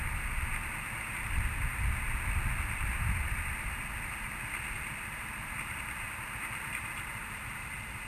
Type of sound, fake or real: real